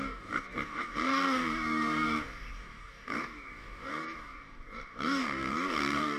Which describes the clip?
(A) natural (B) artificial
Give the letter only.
B